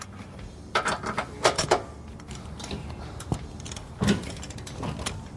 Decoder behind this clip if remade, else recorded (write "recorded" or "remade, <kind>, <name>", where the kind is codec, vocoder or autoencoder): remade, vocoder, BigVGAN v2